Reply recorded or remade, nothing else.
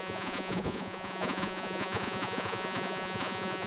remade